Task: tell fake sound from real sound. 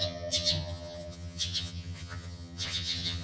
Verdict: fake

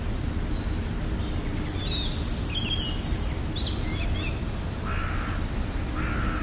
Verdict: real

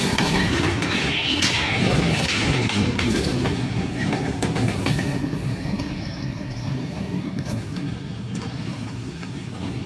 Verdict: fake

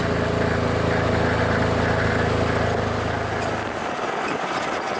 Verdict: real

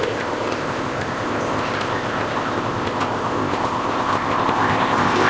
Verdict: fake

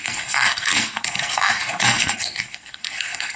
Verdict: fake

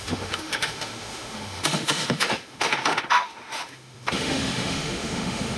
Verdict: fake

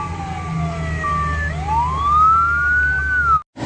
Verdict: real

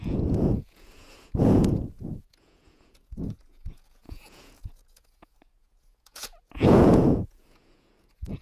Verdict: fake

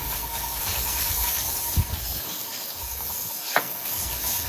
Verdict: fake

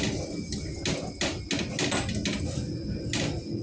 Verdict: real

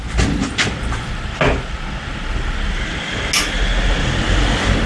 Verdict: real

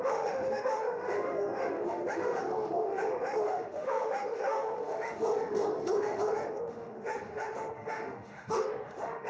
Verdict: fake